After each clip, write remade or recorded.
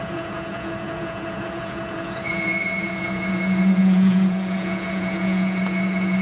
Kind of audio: remade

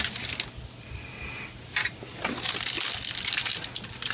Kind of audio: recorded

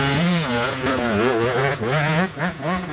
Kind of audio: remade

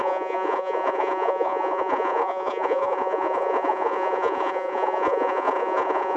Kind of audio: remade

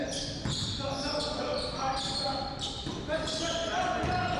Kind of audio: recorded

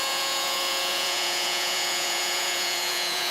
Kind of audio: remade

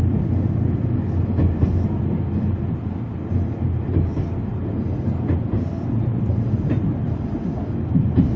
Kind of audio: recorded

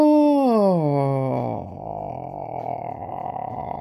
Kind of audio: recorded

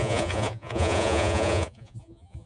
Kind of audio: remade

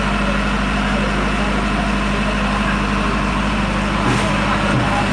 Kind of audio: recorded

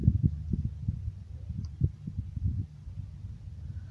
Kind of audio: recorded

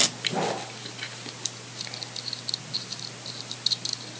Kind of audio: recorded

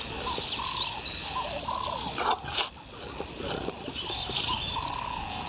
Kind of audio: recorded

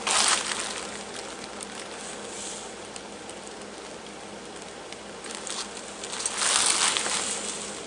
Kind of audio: recorded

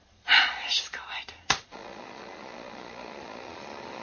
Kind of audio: remade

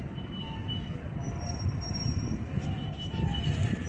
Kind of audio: recorded